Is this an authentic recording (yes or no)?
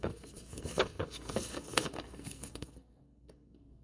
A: no